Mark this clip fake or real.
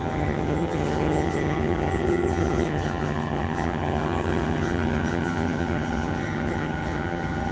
fake